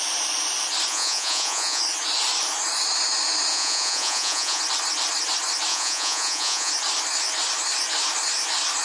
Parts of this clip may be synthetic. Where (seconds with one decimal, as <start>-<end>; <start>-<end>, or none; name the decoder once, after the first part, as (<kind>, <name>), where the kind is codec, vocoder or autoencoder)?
0.9-1.8 (vocoder, Vocos); 3.5-4.6; 5.7-6.7